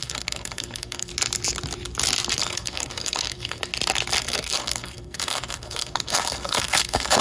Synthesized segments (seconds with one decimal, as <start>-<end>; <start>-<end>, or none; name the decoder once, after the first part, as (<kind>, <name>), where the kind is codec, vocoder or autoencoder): 0.0-1.1 (codec, SNAC); 2.4-3.6; 4.2-7.2